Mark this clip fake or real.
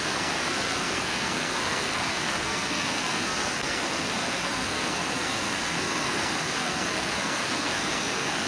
fake